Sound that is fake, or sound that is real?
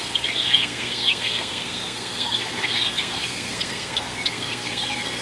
fake